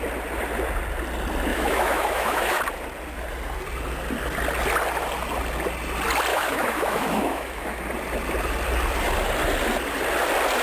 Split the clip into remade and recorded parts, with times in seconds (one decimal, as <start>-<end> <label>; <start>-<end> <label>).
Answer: 0.0-1.5 recorded; 1.5-2.6 remade; 2.6-6.3 recorded; 6.3-7.8 remade; 7.8-10.6 recorded